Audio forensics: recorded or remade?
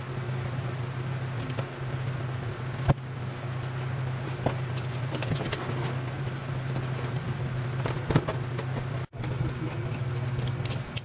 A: recorded